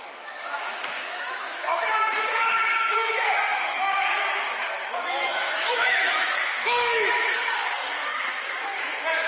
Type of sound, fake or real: fake